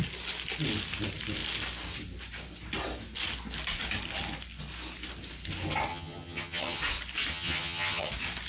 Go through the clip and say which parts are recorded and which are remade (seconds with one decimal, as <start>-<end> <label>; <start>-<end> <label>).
0.0-5.9 recorded; 5.9-6.8 remade; 6.8-7.3 recorded; 7.3-8.1 remade; 8.1-8.5 recorded